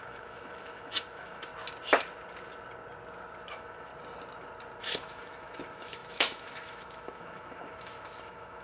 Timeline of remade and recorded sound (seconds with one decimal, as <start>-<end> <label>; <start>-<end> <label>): 0.0-1.5 remade; 1.5-3.5 recorded; 3.5-3.9 remade; 3.9-4.8 recorded; 4.8-8.6 remade